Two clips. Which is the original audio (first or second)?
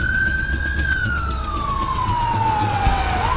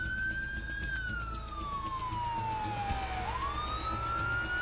second